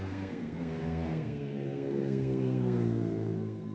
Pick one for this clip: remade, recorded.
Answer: remade